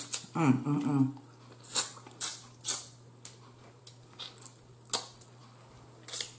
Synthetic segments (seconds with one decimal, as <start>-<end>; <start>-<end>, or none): none